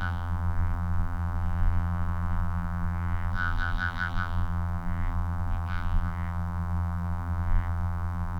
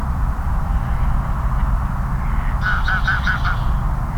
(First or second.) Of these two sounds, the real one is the second